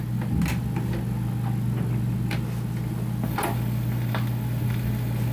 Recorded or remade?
recorded